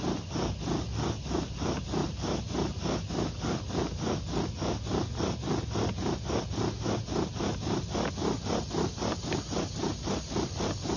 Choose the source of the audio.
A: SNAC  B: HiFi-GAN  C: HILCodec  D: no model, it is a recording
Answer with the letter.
D